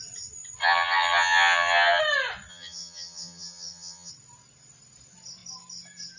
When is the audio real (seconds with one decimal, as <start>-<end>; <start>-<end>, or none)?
0.0-0.6; 2.0-2.5; 4.1-6.2